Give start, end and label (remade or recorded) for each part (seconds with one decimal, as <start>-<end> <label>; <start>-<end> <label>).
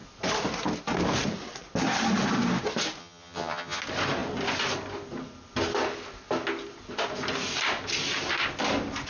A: 0.0-3.0 recorded; 3.0-3.8 remade; 3.8-9.1 recorded